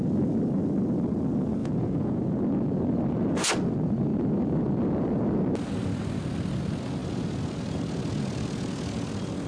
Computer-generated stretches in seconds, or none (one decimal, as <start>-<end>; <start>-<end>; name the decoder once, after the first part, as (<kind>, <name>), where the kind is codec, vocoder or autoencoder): 1.6-2.4 (vocoder, Vocos)